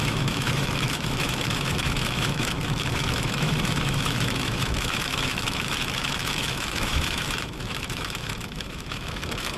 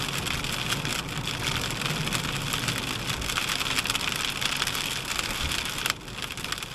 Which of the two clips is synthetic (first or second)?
first